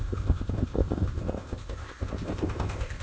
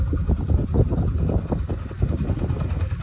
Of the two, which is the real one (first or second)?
second